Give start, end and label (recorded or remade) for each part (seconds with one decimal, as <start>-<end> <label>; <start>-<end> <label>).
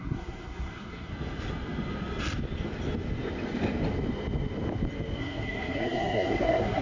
0.0-1.1 remade; 1.1-5.2 recorded; 5.2-6.8 remade